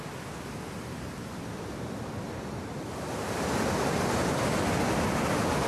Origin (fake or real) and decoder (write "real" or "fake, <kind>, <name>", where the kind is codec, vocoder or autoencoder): fake, vocoder, BigVGAN v2